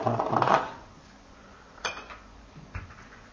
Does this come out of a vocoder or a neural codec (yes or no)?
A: yes